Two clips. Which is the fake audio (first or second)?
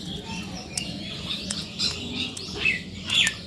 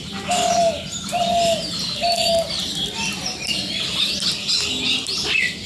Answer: first